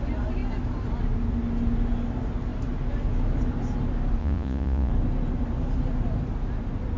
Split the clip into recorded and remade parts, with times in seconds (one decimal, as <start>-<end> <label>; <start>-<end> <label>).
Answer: 0.0-4.2 recorded; 4.2-4.9 remade; 4.9-7.0 recorded